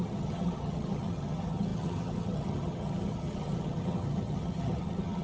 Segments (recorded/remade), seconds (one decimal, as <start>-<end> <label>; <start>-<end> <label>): 0.0-5.2 remade